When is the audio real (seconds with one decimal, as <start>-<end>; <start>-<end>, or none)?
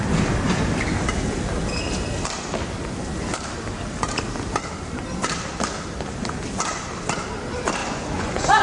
0.0-7.8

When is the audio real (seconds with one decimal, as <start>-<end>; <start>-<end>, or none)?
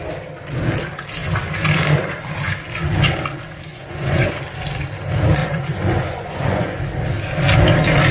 0.0-3.7; 4.3-5.4; 6.8-8.1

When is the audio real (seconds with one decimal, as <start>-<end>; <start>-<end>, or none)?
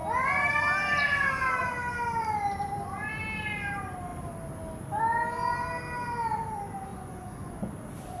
0.0-6.9; 7.7-8.2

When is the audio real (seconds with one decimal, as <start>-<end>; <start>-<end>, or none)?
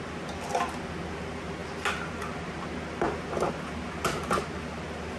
0.0-5.2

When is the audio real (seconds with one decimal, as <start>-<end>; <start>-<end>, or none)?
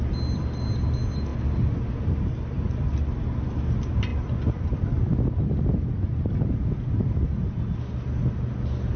0.0-9.0